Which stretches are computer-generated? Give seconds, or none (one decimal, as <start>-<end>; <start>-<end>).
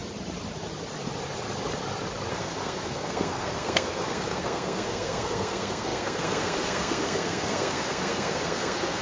2.3-9.0